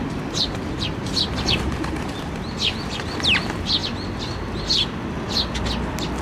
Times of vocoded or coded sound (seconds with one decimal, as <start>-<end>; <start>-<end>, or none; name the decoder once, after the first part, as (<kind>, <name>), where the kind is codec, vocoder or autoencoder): 0.0-3.8 (vocoder, BigVGAN v2)